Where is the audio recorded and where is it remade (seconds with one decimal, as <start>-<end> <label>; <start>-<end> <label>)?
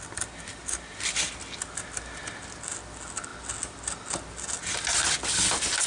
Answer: 0.0-5.9 recorded